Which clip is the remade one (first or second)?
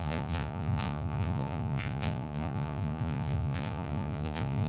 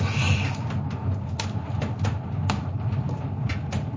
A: first